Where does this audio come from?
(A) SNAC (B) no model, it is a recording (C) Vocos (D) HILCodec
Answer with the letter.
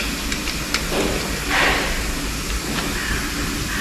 B